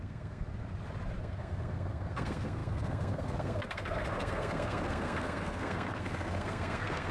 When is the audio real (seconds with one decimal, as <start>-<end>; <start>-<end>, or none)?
0.5-1.2